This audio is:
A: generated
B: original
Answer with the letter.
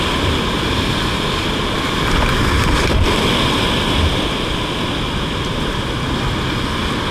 B